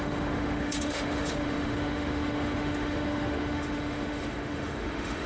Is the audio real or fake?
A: fake